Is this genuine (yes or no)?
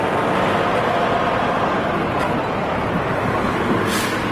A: yes